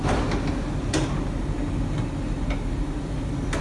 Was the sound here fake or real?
real